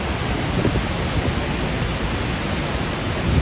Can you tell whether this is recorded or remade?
recorded